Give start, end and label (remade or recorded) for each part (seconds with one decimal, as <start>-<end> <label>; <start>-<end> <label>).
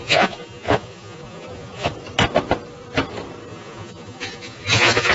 0.0-1.9 remade; 1.9-3.5 recorded; 3.5-5.1 remade